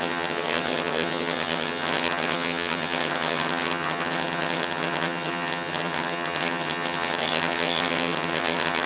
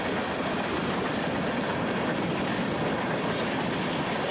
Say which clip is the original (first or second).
second